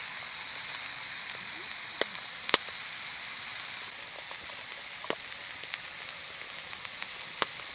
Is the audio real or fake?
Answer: real